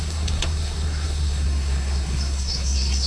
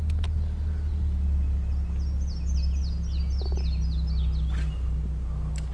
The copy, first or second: first